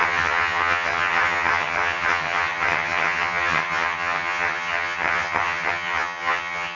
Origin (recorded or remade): remade